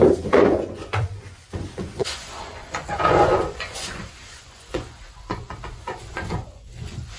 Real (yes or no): no